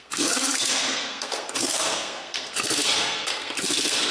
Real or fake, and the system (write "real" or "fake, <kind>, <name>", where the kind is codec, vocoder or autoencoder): fake, codec, SNAC